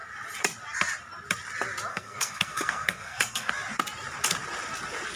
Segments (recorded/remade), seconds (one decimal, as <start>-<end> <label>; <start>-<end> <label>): 0.0-1.9 recorded; 1.9-3.5 remade; 3.5-5.2 recorded